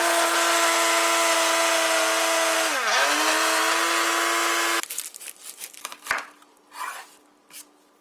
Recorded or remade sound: recorded